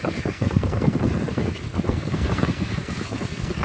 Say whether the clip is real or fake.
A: fake